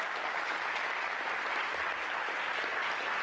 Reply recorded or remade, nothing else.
recorded